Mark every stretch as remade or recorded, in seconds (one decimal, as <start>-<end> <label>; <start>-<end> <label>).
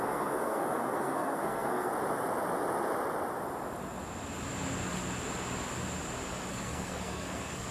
0.0-1.9 remade; 1.9-6.5 recorded; 6.5-7.7 remade